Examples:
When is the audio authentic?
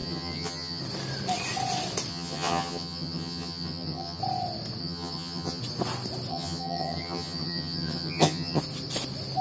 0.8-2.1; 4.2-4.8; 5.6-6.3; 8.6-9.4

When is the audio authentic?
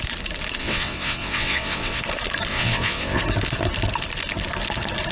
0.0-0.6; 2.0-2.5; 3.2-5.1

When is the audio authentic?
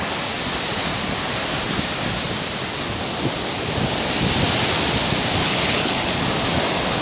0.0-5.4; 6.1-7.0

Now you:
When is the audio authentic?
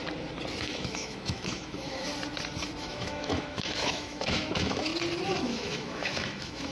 0.0-0.6; 2.1-2.8; 4.9-5.4